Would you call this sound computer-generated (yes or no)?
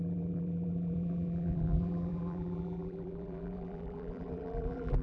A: yes